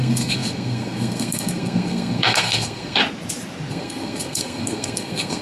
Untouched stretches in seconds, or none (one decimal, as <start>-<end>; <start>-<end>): 3.0-3.7